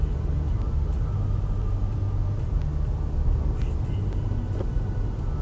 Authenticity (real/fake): real